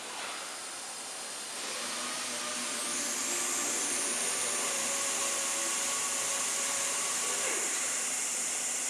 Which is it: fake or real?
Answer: real